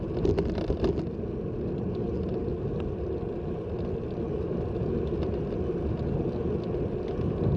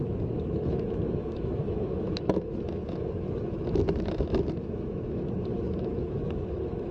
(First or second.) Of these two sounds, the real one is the first